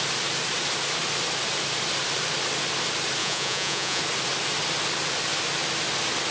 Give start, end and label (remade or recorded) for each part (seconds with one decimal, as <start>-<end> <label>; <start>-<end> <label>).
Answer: 0.0-3.2 recorded; 3.2-4.0 remade; 4.0-6.3 recorded